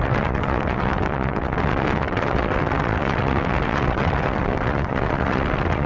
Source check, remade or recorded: remade